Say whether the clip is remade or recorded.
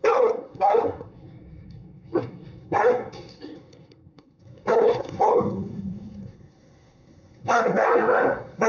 remade